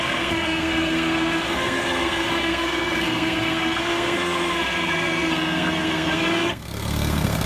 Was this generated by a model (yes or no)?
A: yes